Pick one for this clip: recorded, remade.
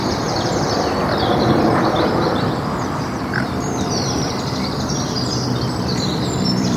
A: remade